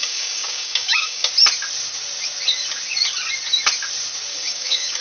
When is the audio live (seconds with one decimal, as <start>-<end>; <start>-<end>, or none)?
1.3-4.3